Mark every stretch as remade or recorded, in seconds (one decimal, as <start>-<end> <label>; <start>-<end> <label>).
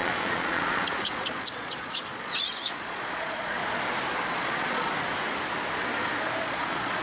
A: 0.0-3.6 remade; 3.6-4.3 recorded; 4.3-4.9 remade; 4.9-6.4 recorded; 6.4-7.0 remade